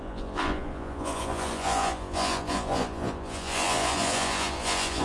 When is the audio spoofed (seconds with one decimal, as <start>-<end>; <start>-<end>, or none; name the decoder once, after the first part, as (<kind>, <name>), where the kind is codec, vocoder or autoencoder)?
0.0-5.0 (vocoder, Vocos)